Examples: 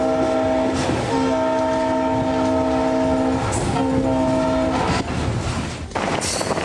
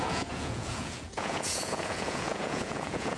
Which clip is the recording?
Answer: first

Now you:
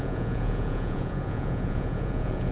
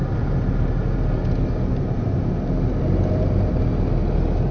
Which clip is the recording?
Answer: second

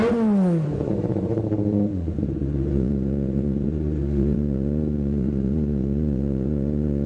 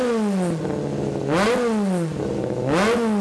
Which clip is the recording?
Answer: second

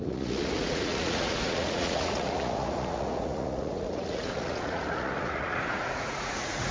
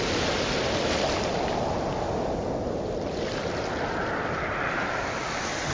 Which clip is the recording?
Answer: second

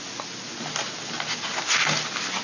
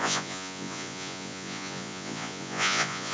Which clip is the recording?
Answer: first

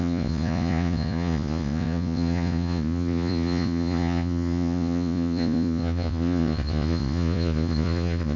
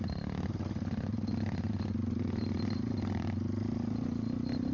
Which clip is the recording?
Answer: second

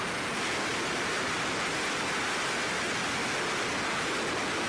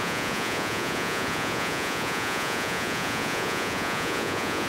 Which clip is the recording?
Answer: first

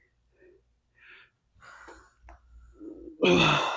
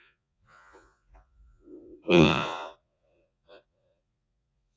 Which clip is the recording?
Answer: first